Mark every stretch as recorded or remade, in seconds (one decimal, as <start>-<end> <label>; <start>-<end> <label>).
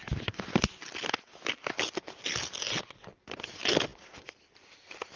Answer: 0.0-5.2 recorded